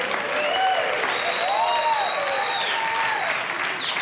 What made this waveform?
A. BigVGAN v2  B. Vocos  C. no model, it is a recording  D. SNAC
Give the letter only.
C